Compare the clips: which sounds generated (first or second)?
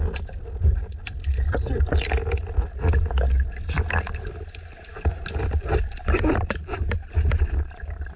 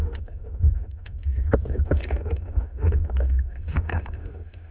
second